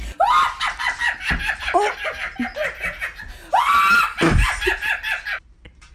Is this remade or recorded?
recorded